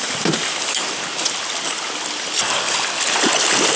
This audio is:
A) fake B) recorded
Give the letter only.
B